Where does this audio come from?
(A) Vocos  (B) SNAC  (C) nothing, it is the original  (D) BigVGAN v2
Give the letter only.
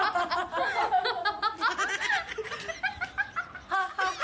C